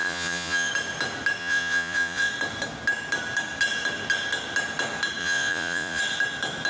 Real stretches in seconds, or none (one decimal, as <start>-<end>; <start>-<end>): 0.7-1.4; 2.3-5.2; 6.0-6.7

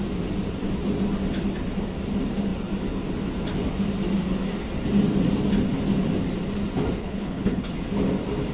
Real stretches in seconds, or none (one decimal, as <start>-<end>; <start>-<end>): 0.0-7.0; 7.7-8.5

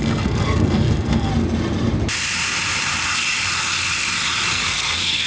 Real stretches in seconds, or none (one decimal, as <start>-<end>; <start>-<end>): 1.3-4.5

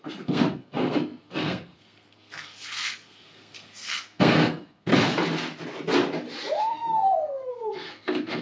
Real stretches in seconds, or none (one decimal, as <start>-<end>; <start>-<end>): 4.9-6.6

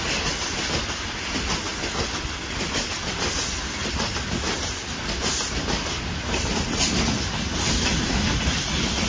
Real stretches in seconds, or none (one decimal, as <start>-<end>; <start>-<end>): 0.0-9.1